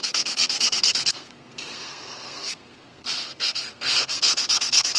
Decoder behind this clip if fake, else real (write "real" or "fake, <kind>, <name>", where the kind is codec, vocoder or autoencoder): fake, codec, SNAC